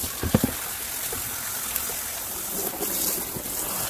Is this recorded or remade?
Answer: recorded